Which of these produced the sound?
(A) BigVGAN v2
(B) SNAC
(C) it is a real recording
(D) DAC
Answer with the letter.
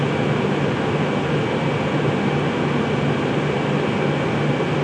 C